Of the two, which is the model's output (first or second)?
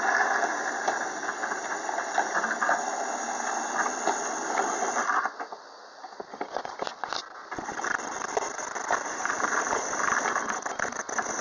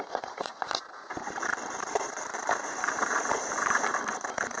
second